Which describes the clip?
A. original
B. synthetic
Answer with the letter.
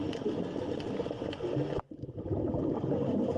A